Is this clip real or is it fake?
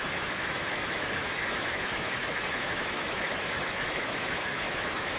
fake